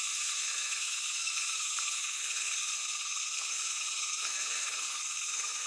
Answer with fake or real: fake